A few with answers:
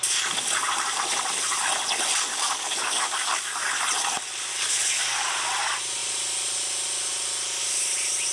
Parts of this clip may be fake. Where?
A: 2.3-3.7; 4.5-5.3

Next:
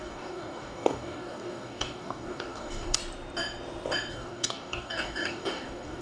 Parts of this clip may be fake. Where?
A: 0.0-3.0; 4.1-6.0

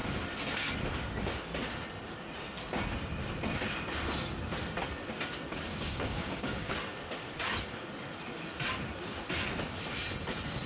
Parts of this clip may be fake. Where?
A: 5.7-6.7

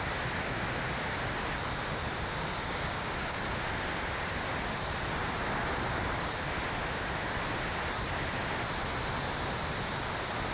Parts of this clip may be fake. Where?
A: 2.5-3.4